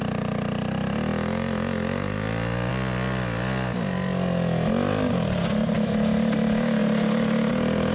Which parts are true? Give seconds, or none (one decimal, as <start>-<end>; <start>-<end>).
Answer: 0.0-7.9